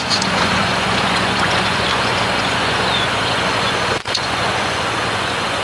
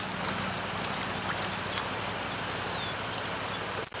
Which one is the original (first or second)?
second